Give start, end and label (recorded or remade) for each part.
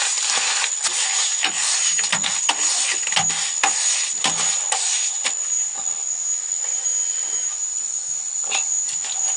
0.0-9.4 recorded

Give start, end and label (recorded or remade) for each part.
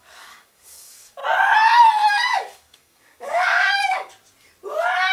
0.0-1.2 remade; 1.2-2.1 recorded; 2.1-4.1 remade; 4.1-5.1 recorded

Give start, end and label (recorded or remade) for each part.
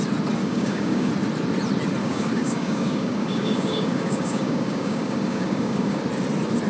0.0-0.4 recorded; 0.4-1.1 remade; 1.1-2.0 recorded; 2.0-6.0 remade; 6.0-6.7 recorded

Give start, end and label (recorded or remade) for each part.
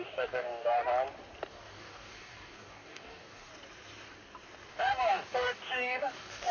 0.0-0.8 remade; 0.8-1.5 recorded; 1.5-3.5 remade; 3.5-4.7 recorded; 4.7-6.5 remade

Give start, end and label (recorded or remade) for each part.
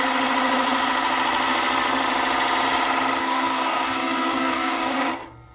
0.0-3.2 recorded; 3.2-5.1 remade; 5.1-5.5 recorded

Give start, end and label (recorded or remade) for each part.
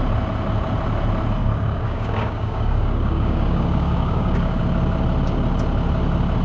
0.0-1.4 recorded; 1.4-4.6 remade; 4.6-6.4 recorded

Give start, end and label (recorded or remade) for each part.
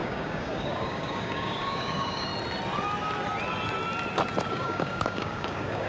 0.0-2.3 remade; 2.3-4.5 recorded; 4.5-5.9 remade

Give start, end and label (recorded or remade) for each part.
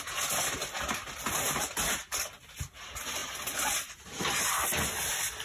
0.0-5.4 recorded